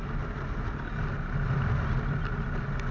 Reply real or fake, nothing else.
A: real